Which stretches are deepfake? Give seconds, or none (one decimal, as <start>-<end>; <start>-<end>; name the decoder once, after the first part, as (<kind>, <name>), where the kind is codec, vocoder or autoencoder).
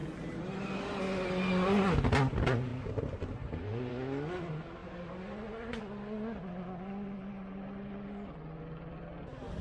0.0-1.0 (vocoder, BigVGAN v2); 2.7-3.9